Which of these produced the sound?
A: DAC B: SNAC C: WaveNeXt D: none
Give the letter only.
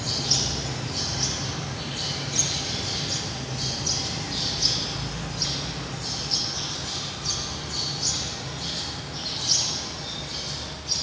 D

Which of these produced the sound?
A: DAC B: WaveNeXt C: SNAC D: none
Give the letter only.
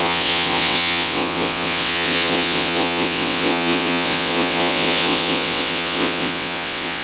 B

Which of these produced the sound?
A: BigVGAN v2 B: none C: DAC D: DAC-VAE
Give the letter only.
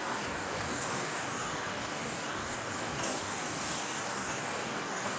C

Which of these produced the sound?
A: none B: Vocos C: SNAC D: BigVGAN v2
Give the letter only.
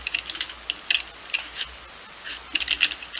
A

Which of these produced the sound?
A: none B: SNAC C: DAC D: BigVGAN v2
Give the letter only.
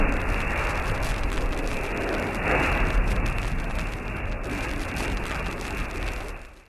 A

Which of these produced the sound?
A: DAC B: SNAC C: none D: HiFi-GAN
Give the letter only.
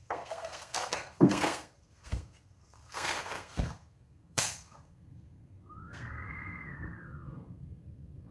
B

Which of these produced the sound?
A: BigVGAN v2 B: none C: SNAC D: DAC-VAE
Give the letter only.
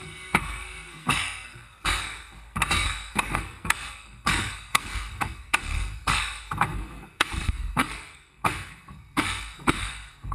C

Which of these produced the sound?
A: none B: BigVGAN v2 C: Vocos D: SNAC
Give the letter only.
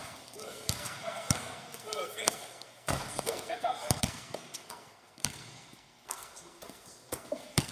D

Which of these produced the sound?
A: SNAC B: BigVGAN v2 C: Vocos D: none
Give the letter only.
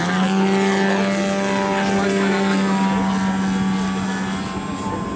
D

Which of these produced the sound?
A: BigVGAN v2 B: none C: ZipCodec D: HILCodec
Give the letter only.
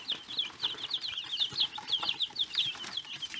B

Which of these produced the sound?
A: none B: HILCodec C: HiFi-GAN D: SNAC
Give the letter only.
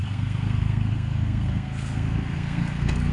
D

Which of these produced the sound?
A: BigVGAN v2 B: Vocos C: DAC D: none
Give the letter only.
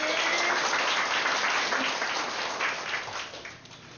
D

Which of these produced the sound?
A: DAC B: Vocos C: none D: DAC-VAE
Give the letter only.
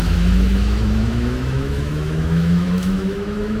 D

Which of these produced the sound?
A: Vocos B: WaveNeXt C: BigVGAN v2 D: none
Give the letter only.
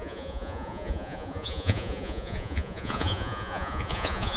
A